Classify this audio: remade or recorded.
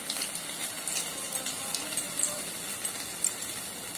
recorded